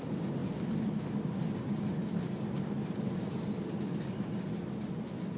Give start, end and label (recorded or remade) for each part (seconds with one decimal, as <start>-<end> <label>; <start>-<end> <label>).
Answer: 0.0-5.4 recorded